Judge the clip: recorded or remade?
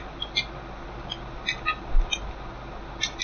recorded